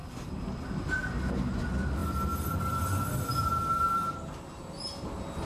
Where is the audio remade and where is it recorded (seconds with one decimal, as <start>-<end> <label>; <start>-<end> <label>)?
0.0-5.5 recorded